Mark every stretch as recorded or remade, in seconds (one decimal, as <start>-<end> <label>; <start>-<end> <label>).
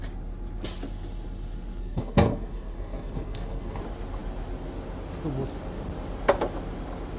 0.0-1.8 recorded; 1.8-3.8 remade; 3.8-7.2 recorded